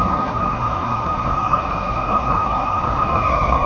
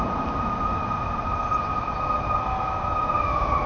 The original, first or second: second